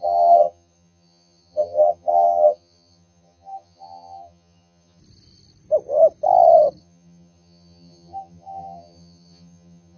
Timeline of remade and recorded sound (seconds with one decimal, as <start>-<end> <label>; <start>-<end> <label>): 0.0-5.0 remade; 5.0-6.8 recorded; 6.8-10.0 remade